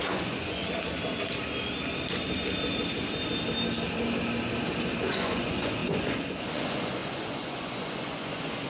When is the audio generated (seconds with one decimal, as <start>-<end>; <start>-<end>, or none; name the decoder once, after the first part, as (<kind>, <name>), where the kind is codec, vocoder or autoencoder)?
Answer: 0.0-0.6 (vocoder, Vocos); 5.0-8.7